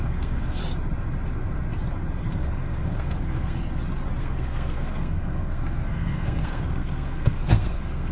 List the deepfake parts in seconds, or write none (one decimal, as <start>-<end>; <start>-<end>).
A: 0.0-0.6; 2.2-3.6; 4.2-8.1